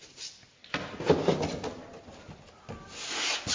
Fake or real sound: real